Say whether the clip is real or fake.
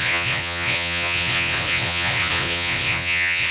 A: fake